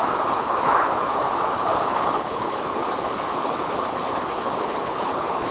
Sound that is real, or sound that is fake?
fake